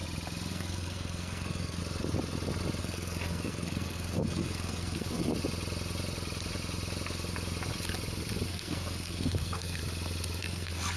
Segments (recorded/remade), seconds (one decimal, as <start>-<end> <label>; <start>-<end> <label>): 0.0-0.5 recorded; 0.5-1.8 remade; 1.8-2.8 recorded; 2.8-5.3 remade; 5.3-8.5 recorded; 8.5-9.8 remade; 9.8-10.4 recorded; 10.4-11.0 remade